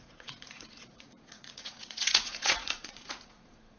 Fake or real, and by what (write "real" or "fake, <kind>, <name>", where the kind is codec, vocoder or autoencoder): fake, vocoder, Vocos